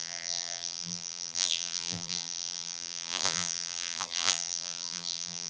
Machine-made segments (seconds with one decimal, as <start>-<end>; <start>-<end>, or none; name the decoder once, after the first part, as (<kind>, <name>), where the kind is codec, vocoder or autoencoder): 0.0-5.5 (vocoder, BigVGAN v2)